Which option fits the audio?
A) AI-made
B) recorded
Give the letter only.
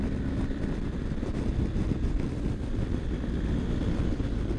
A